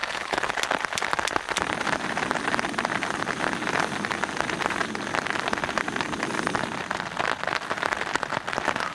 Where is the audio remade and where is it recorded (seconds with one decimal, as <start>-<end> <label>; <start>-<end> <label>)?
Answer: 0.0-0.6 remade; 0.6-8.9 recorded